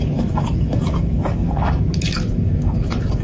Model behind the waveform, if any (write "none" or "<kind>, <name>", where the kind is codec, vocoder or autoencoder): autoencoder, DAC-VAE